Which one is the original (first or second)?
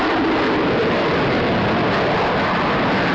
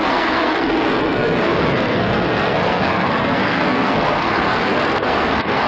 first